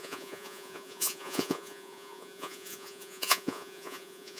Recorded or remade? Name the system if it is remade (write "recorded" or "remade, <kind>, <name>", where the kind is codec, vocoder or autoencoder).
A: remade, vocoder, Vocos